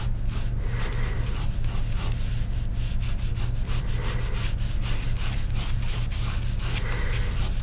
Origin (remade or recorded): recorded